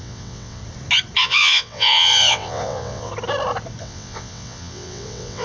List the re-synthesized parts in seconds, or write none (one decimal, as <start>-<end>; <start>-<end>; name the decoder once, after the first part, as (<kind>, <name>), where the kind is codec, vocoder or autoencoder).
0.0-0.6 (vocoder, WaveNeXt); 1.2-3.1; 3.8-5.4